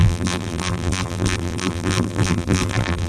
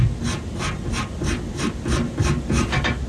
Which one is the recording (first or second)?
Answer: second